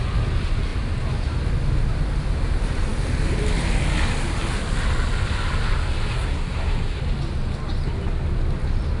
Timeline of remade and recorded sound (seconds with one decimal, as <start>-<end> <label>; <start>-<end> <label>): 0.0-6.1 recorded; 6.1-7.0 remade; 7.0-9.0 recorded